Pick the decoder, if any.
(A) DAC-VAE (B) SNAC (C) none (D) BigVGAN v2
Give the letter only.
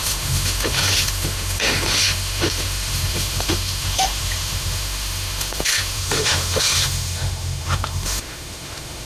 A